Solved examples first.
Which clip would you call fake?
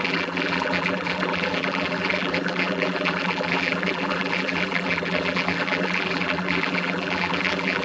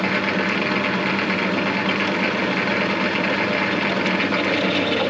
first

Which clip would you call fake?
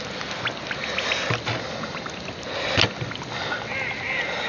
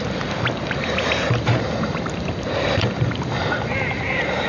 second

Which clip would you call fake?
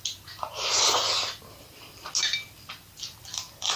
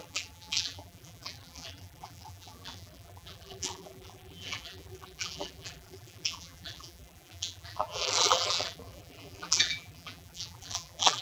second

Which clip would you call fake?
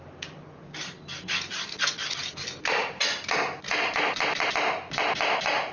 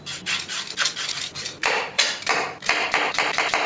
second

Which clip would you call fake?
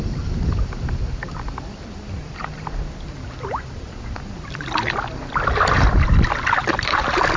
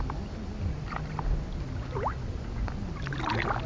first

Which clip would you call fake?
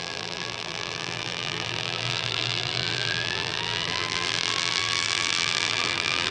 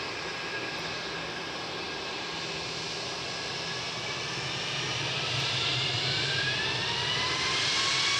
first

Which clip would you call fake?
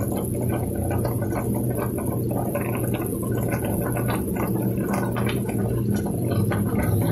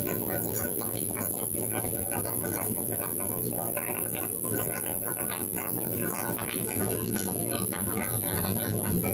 second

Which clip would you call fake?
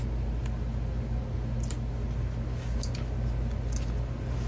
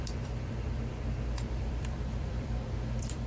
second